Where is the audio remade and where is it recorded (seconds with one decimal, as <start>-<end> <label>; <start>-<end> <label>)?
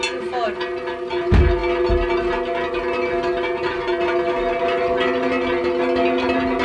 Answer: 0.0-6.6 recorded